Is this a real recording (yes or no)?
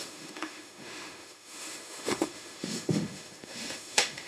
no